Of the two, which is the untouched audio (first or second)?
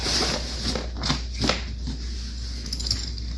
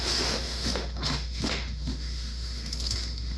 first